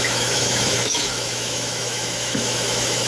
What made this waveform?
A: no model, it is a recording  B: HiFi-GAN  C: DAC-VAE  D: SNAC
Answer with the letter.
C